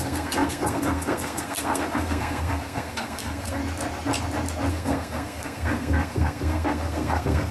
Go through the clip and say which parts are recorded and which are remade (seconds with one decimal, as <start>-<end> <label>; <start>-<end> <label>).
0.0-3.6 remade; 3.6-4.7 recorded; 4.7-7.5 remade